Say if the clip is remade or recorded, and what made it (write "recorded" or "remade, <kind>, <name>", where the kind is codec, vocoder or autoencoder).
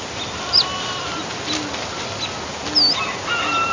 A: recorded